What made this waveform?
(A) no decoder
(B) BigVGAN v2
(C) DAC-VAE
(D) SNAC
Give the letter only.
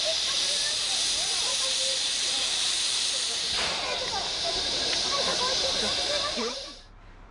B